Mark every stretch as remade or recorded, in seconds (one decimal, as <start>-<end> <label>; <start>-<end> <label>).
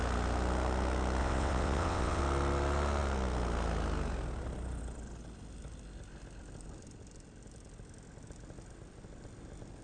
0.0-1.2 recorded; 1.2-2.2 remade; 2.2-9.8 recorded